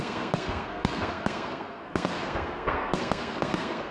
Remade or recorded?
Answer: remade